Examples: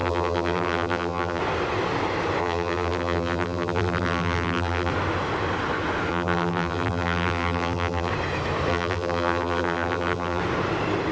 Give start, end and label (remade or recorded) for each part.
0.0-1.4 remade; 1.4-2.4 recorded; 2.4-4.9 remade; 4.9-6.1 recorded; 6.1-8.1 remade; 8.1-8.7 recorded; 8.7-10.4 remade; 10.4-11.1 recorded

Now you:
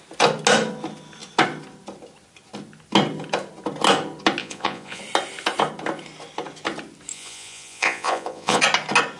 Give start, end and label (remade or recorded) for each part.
0.0-4.4 recorded; 4.4-5.0 remade; 5.0-7.1 recorded; 7.1-8.6 remade; 8.6-9.2 recorded

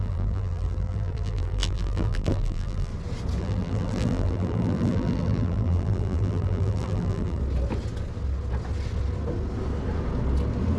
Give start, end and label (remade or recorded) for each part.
0.0-2.9 remade; 2.9-3.4 recorded; 3.4-7.4 remade; 7.4-10.8 recorded